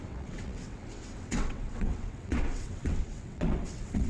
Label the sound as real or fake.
fake